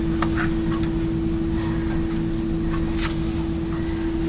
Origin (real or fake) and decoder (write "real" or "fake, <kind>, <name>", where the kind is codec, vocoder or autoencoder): real